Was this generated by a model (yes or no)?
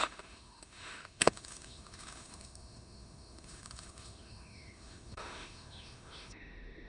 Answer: yes